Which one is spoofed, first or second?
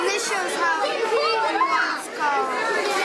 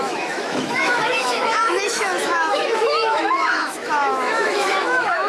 second